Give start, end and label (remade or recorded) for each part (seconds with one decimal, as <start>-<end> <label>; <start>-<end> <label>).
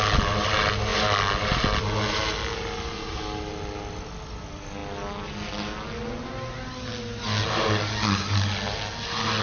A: 0.0-9.4 recorded